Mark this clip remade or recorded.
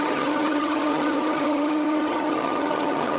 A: remade